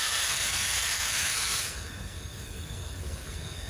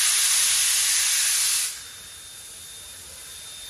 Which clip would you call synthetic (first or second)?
first